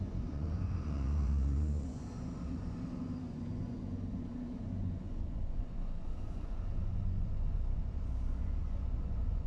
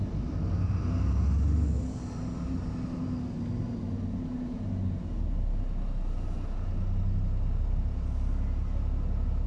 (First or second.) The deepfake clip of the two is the first